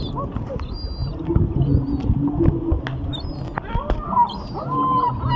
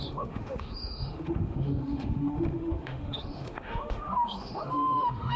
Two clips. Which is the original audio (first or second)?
first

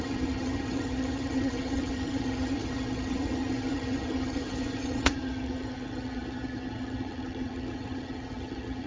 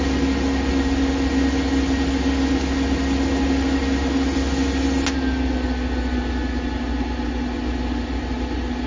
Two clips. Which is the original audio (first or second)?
second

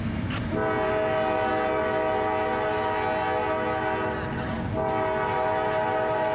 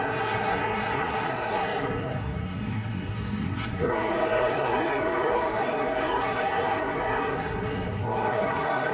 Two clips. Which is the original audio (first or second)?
first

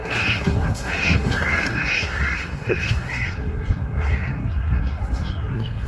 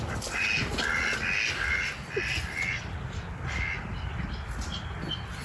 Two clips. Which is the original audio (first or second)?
second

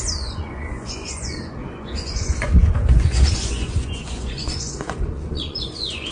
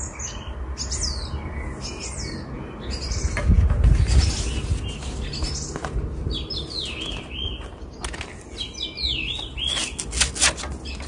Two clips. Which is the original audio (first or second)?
second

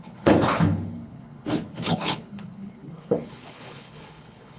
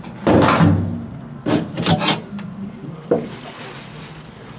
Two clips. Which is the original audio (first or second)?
second